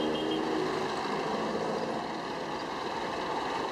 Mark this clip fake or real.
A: real